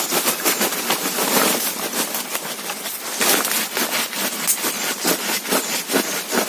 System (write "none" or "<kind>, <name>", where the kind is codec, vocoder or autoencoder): none